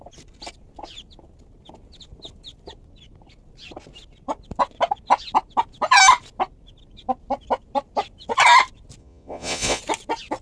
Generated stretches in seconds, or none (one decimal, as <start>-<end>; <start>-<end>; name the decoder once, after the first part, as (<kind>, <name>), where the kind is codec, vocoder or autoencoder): 9.0-9.8 (vocoder, Vocos)